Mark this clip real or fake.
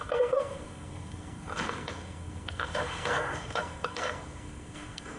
fake